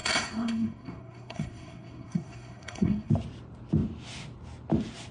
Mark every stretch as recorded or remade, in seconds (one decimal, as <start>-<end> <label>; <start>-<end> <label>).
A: 0.0-3.1 remade; 3.1-5.1 recorded